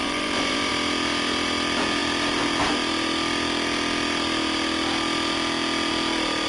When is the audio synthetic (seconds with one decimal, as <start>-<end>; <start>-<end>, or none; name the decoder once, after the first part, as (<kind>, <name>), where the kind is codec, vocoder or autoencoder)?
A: 0.0-0.7 (vocoder, Vocos)